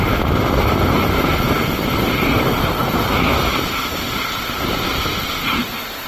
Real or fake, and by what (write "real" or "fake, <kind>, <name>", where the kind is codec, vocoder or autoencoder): fake, vocoder, BigVGAN v2